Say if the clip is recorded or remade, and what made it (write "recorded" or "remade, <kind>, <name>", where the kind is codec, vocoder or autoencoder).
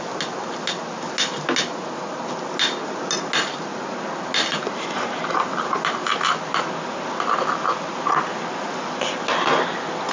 recorded